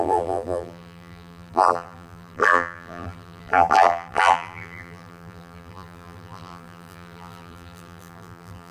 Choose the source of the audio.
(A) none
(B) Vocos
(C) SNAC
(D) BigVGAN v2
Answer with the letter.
D